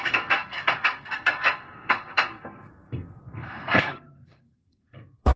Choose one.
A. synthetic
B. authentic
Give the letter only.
A